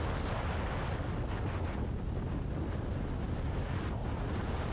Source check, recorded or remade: recorded